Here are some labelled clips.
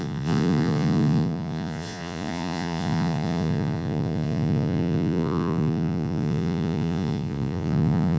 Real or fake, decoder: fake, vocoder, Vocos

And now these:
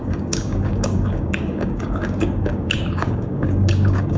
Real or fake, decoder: fake, codec, DAC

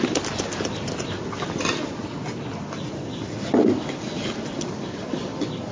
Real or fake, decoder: real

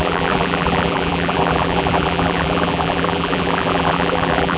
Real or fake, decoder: fake, vocoder, BigVGAN v2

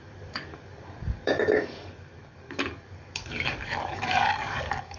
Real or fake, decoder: fake, codec, DAC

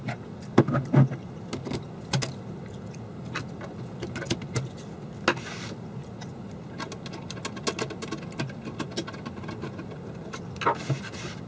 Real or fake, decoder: real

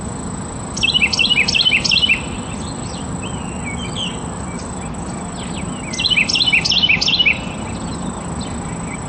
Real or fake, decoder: real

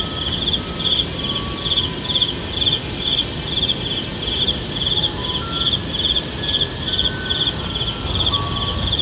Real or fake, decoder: real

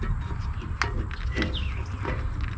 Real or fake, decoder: real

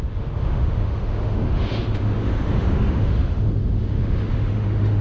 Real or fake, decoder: fake, autoencoder, DAC-VAE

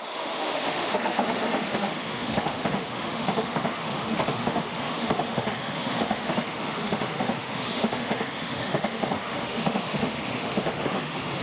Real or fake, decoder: fake, autoencoder, DAC-VAE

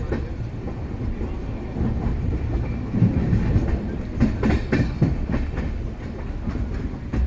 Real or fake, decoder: real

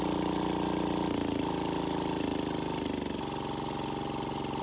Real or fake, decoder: real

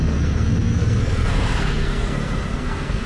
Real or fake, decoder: fake, codec, SNAC